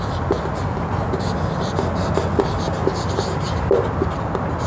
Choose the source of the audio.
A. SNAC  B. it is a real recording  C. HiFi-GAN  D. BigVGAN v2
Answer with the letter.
B